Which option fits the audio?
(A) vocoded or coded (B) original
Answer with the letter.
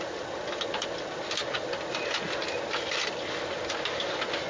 B